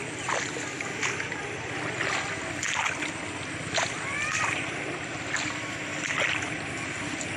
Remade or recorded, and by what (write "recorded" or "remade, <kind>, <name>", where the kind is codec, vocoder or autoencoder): recorded